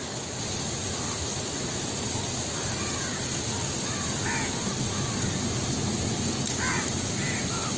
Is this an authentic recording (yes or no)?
yes